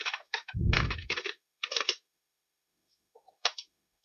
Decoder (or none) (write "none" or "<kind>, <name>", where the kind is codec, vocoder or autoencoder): autoencoder, DAC-VAE